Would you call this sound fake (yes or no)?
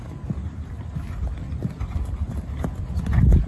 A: no